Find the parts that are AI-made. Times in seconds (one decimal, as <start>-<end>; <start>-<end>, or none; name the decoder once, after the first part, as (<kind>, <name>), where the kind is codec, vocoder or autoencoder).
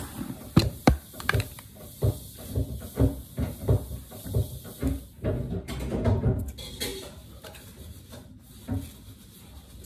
0.6-1.2 (vocoder, BigVGAN v2); 6.9-8.1